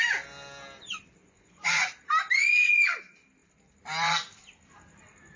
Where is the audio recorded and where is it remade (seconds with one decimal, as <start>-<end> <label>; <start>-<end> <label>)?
0.0-1.2 recorded; 1.2-1.9 remade; 1.9-2.4 recorded; 2.4-3.0 remade; 3.0-5.4 recorded